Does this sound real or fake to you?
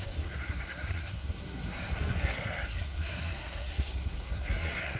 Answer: fake